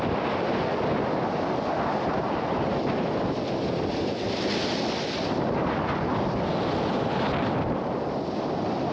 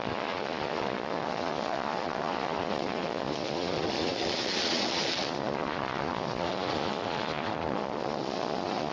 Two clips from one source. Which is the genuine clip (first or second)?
first